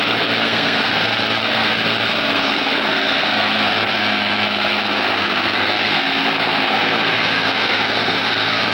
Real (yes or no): no